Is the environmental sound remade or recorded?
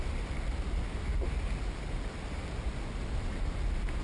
recorded